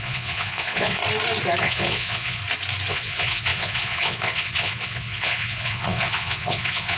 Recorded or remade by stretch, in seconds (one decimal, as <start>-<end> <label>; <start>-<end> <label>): 0.0-1.0 remade; 1.0-1.6 recorded; 1.6-2.4 remade; 2.4-2.9 recorded; 2.9-7.0 remade